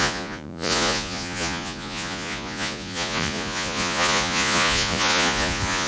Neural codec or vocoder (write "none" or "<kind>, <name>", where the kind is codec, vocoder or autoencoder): vocoder, Vocos